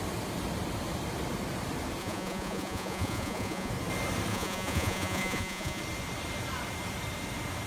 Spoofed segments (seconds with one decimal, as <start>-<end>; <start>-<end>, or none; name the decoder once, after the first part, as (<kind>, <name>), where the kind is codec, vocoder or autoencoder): 2.0-3.7 (vocoder, Vocos); 4.3-5.8